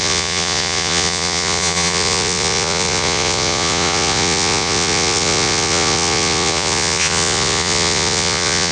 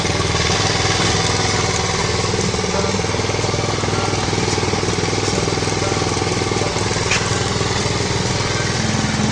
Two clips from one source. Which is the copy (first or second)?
first